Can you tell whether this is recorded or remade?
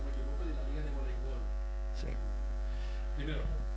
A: remade